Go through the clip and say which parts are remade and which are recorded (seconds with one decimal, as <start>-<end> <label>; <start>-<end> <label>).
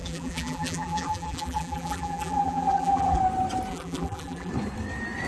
0.0-3.2 remade; 3.2-3.7 recorded; 3.7-4.5 remade; 4.5-5.3 recorded